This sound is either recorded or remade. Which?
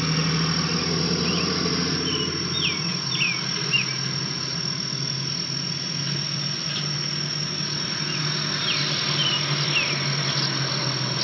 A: recorded